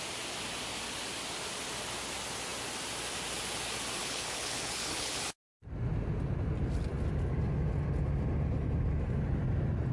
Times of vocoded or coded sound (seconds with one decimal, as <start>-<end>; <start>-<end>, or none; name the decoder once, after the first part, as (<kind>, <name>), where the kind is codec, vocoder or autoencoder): 4.0-5.2 (codec, HILCodec)